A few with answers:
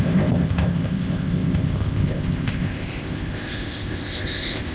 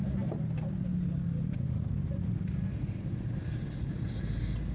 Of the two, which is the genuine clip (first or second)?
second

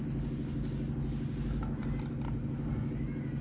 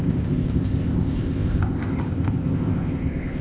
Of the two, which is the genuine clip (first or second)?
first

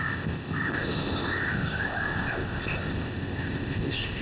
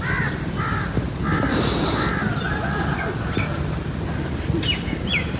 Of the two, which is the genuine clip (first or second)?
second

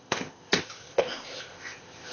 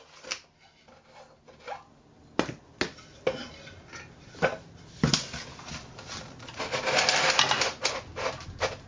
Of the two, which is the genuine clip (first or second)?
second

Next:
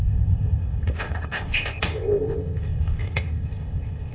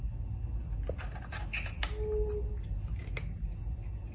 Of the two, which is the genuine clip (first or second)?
second